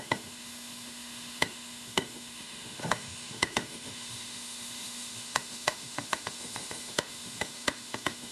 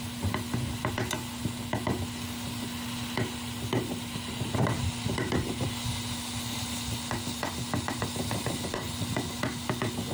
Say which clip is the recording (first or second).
second